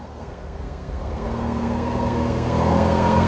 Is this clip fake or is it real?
fake